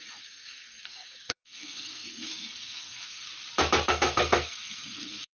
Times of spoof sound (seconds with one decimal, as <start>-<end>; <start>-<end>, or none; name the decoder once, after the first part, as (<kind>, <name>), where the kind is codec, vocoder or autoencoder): 0.0-3.3 (codec, SNAC); 3.9-5.4